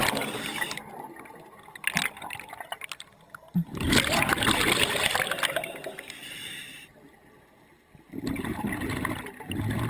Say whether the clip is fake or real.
real